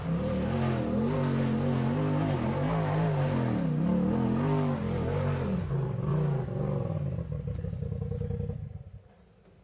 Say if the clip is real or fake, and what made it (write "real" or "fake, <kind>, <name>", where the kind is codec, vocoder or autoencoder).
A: real